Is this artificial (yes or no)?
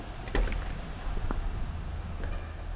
no